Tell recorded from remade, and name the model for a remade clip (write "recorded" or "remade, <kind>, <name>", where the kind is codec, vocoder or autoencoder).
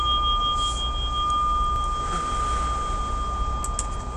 recorded